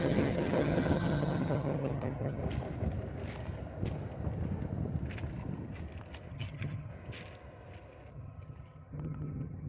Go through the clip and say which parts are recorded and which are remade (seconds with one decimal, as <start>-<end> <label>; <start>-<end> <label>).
0.0-2.4 remade; 2.4-6.3 recorded; 6.3-6.9 remade; 6.9-8.1 recorded; 8.1-9.7 remade